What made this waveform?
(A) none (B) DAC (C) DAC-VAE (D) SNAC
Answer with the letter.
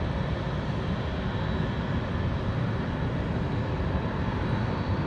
A